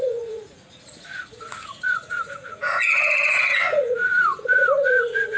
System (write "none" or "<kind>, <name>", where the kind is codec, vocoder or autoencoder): vocoder, Vocos